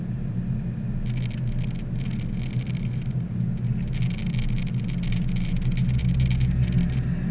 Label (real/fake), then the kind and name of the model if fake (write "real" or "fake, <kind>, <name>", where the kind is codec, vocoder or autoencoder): real